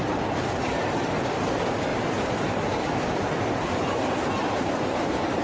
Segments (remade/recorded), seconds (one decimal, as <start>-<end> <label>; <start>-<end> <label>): 0.0-1.9 recorded; 1.9-3.9 remade; 3.9-4.4 recorded; 4.4-5.4 remade

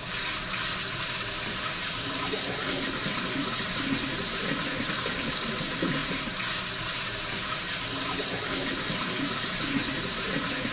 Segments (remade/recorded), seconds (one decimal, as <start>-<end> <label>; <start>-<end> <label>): 0.0-6.0 remade; 6.0-8.2 recorded; 8.2-9.8 remade; 9.8-10.7 recorded